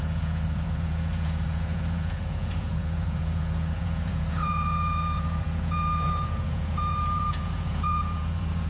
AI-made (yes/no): yes